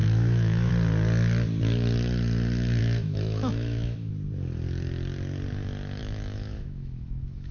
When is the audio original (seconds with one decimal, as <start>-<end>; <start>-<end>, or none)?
0.7-2.8; 4.1-6.0